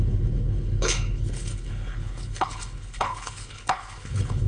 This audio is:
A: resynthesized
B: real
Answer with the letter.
A